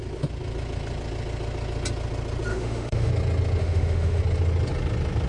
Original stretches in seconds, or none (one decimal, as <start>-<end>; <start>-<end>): 0.0-2.5; 3.1-3.6; 4.2-5.3